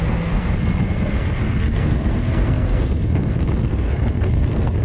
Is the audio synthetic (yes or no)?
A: yes